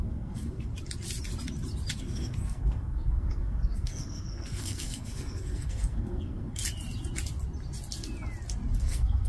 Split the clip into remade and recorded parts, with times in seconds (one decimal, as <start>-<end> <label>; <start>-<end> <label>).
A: 0.0-0.7 remade; 0.7-2.0 recorded; 2.0-6.6 remade; 6.6-8.8 recorded; 8.8-9.3 remade